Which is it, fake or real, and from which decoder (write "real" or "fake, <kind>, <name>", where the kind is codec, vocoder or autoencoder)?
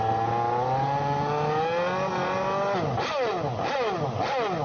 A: real